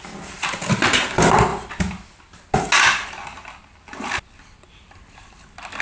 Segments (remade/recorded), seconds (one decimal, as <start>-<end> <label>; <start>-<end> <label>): 0.0-5.8 recorded